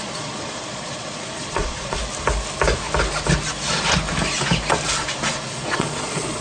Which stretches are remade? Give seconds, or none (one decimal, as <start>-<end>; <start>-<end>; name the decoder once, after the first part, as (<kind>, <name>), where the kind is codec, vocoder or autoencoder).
0.0-2.0 (vocoder, Vocos); 5.5-6.4